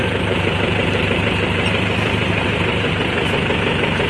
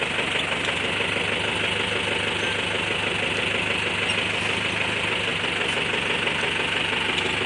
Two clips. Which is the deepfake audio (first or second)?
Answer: first